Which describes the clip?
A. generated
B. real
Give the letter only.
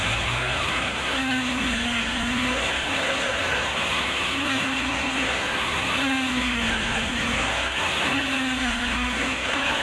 A